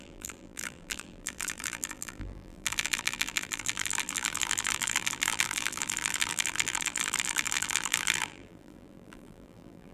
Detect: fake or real fake